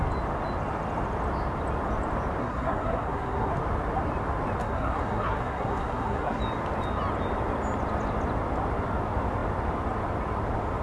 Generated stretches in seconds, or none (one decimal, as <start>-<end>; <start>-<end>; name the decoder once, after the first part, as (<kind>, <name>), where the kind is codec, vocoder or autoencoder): 2.4-3.5 (codec, SNAC); 4.6-6.4